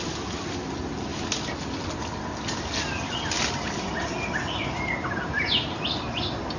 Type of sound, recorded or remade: recorded